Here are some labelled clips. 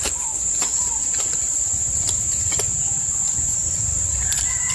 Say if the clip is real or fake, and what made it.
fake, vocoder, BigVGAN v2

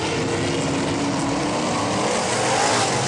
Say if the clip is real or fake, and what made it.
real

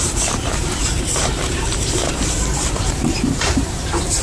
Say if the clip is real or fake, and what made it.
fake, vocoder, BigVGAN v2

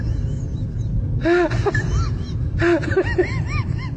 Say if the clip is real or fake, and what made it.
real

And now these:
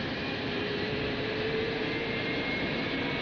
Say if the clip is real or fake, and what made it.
fake, vocoder, BigVGAN v2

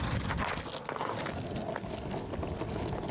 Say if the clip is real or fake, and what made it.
real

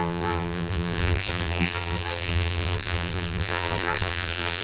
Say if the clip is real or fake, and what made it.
fake, vocoder, BigVGAN v2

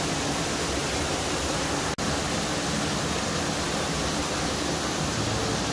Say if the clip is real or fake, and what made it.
real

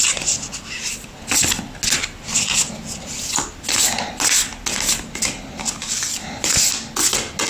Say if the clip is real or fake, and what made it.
real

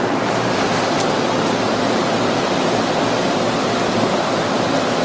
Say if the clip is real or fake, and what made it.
fake, vocoder, BigVGAN v2